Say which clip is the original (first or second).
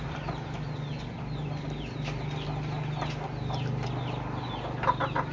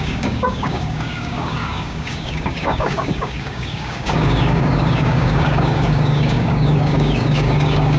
first